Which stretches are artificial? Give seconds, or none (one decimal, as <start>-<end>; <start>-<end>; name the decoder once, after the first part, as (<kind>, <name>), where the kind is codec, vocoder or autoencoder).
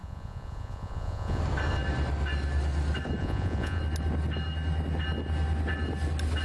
0.0-1.4 (vocoder, Vocos); 3.2-3.8